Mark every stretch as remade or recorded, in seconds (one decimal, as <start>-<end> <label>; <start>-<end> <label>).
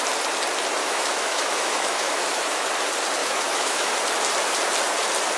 0.0-0.8 recorded; 0.8-2.7 remade; 2.7-3.2 recorded; 3.2-3.9 remade; 3.9-5.4 recorded